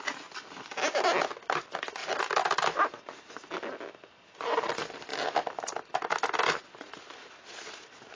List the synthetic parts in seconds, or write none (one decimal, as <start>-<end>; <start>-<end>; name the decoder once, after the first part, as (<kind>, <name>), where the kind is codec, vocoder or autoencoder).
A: none